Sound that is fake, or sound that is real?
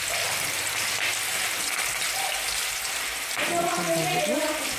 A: real